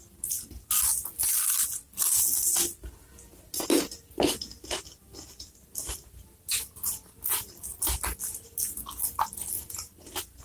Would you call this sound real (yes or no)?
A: yes